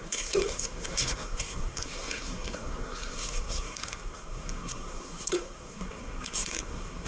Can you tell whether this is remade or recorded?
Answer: remade